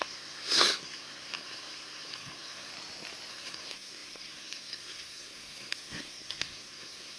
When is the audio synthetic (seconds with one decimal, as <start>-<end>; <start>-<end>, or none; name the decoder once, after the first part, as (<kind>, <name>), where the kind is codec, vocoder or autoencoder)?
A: 0.0-2.7 (codec, SNAC); 3.3-7.2